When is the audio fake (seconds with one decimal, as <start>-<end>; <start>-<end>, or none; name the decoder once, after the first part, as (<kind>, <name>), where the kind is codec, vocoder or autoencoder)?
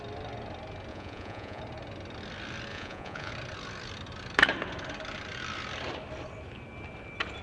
0.9-1.6 (vocoder, Vocos); 2.7-3.3